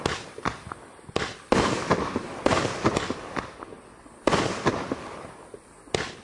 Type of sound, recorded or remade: recorded